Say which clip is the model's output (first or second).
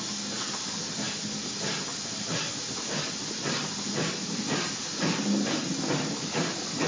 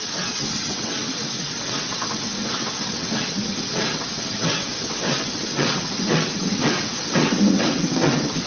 second